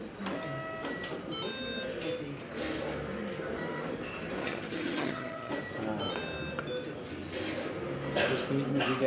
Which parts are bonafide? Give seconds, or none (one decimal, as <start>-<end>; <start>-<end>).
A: 0.0-4.4; 5.5-9.1